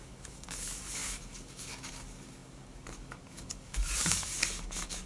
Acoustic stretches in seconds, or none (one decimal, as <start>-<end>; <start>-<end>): none